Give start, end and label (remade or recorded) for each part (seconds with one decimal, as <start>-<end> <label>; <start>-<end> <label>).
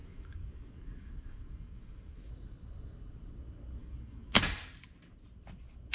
0.0-2.3 remade; 2.3-3.8 recorded; 3.8-4.4 remade; 4.4-5.9 recorded